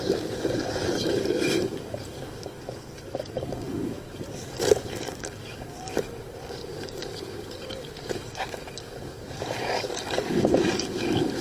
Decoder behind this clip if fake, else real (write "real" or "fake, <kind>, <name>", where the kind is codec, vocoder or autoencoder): fake, codec, DAC